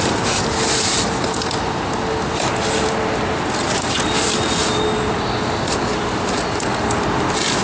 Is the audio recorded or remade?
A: recorded